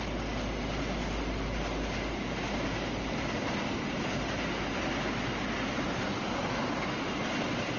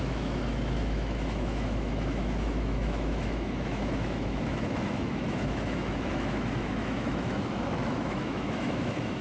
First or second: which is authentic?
first